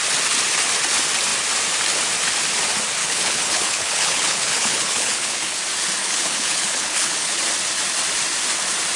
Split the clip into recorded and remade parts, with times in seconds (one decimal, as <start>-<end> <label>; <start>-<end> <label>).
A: 0.0-3.0 recorded; 3.0-5.6 remade; 5.6-6.0 recorded; 6.0-7.4 remade; 7.4-9.0 recorded

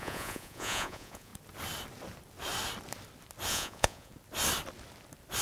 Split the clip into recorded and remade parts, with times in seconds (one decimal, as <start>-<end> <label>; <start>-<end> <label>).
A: 0.0-1.3 remade; 1.3-3.5 recorded; 3.5-4.1 remade; 4.1-5.4 recorded